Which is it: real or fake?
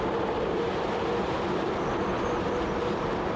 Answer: fake